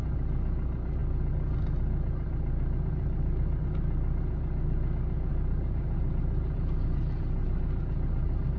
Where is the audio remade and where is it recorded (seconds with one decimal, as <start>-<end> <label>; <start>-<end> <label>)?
0.0-5.3 recorded; 5.3-8.6 remade